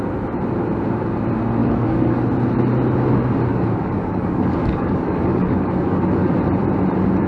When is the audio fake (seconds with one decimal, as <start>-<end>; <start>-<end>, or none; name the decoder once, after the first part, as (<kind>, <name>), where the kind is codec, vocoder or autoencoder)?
1.6-2.2 (codec, DAC); 3.5-6.4

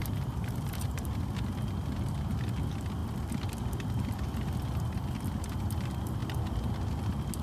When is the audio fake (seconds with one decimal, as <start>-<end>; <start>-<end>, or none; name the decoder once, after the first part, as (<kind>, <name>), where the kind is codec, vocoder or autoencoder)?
0.0-1.3 (vocoder, BigVGAN v2)